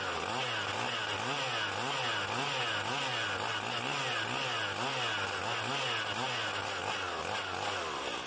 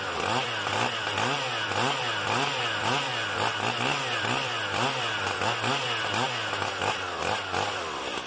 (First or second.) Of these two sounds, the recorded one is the first